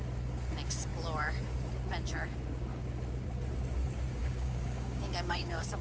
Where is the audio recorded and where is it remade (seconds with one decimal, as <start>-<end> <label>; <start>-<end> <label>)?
0.0-4.2 recorded; 4.2-5.8 remade